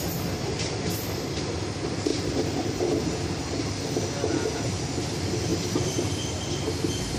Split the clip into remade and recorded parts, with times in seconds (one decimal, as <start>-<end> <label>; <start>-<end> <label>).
0.0-2.1 recorded; 2.1-3.7 remade; 3.7-5.5 recorded; 5.5-6.3 remade; 6.3-7.2 recorded